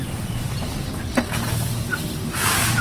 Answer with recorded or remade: recorded